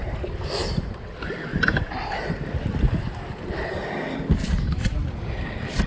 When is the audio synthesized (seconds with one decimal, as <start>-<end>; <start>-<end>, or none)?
1.5-3.9; 4.4-5.1